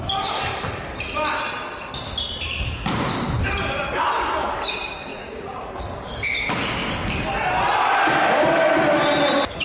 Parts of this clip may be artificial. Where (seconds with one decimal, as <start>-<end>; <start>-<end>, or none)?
5.1-5.7